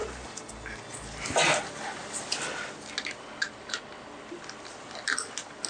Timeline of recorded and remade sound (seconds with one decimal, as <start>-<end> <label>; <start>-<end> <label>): 0.0-5.7 recorded